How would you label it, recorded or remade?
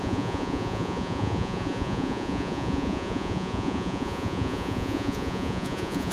remade